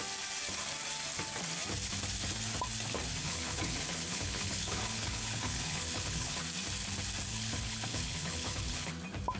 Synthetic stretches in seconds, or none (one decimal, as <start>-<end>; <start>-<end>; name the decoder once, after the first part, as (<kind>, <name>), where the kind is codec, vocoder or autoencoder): 3.2-6.4 (codec, HILCodec); 7.3-8.9